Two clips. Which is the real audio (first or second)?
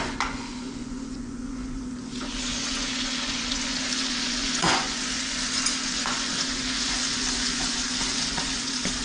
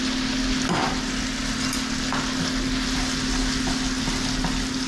second